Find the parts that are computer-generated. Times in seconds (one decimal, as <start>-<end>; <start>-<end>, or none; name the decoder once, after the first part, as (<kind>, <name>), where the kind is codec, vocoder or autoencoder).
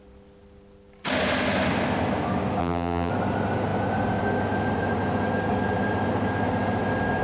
2.6-3.1 (vocoder, BigVGAN v2)